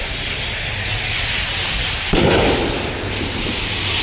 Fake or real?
real